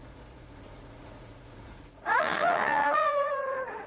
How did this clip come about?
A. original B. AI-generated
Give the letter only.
B